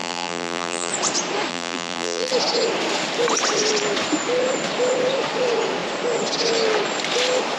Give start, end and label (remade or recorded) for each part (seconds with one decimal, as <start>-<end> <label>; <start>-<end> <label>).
0.0-0.9 remade; 0.9-1.5 recorded; 1.5-2.3 remade; 2.3-7.6 recorded